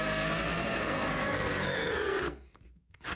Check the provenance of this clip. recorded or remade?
remade